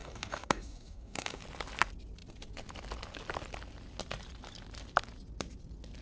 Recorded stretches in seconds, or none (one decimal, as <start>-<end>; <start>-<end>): 1.4-6.0